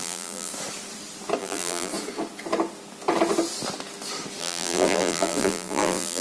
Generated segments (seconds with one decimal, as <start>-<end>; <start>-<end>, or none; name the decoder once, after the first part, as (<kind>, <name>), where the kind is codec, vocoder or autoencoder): 0.0-0.5 (vocoder, BigVGAN v2); 1.4-1.9; 4.4-6.2